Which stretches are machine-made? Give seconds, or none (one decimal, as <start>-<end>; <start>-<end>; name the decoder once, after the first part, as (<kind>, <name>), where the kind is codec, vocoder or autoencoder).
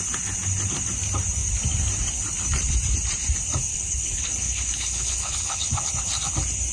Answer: 3.7-5.9 (codec, HILCodec)